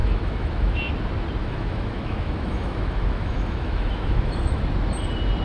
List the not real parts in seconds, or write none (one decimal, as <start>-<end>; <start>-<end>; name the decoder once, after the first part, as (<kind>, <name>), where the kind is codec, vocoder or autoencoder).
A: 0.0-0.8 (autoencoder, DAC-VAE); 1.4-4.6